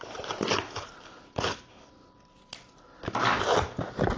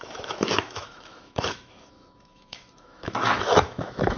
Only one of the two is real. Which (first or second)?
first